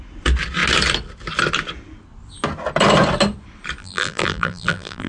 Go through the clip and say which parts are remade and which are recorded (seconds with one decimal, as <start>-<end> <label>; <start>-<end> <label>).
0.0-3.8 recorded; 3.8-5.1 remade